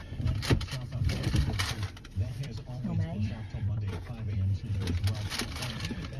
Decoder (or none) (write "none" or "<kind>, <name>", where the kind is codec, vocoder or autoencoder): vocoder, BigVGAN v2